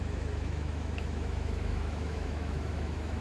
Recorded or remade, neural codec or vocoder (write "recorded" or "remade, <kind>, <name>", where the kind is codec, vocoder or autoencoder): remade, autoencoder, DAC-VAE